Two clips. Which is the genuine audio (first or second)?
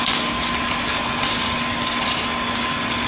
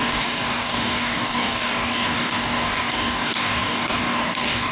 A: first